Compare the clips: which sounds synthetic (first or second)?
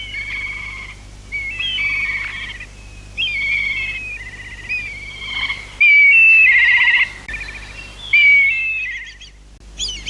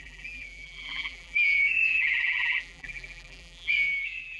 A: second